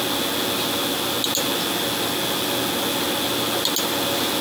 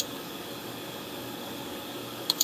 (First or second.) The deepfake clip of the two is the second